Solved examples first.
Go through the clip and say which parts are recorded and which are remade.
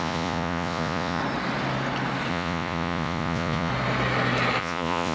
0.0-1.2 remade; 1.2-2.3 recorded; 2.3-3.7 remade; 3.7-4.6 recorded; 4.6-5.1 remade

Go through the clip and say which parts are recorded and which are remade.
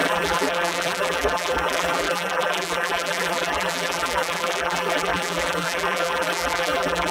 0.0-7.1 remade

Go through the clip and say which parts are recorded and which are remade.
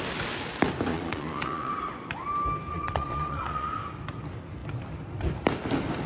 0.0-0.9 recorded; 0.9-1.7 remade; 1.7-2.7 recorded; 2.7-3.7 remade; 3.7-6.1 recorded